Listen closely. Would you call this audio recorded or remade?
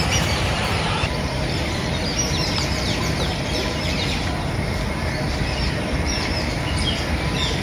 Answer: remade